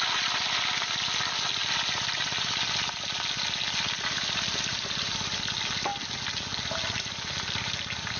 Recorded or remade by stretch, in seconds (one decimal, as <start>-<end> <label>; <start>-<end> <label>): 0.0-8.2 recorded